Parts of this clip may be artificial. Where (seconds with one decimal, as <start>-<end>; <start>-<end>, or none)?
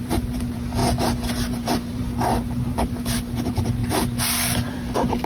0.0-0.8; 1.3-3.8; 4.7-5.3